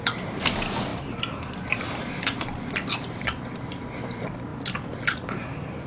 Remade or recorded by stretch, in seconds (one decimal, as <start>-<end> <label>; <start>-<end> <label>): 0.0-5.9 recorded